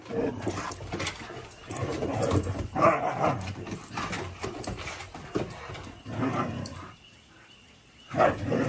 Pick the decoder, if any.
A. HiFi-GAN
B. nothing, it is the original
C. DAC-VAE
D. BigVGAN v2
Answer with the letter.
B